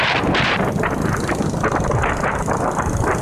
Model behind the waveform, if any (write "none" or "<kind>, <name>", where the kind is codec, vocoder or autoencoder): none